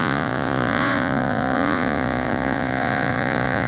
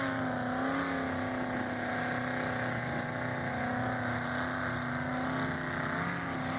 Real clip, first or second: second